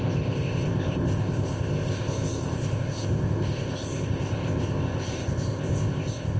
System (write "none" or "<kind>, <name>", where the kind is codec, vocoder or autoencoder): codec, ZipCodec